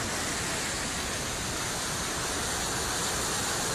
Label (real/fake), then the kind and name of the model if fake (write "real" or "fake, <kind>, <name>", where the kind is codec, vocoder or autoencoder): real